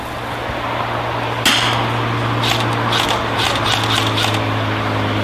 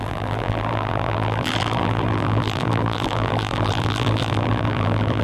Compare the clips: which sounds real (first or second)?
first